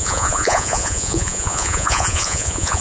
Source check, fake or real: fake